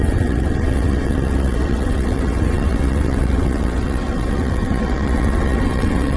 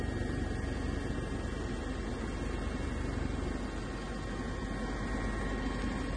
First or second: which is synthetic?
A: first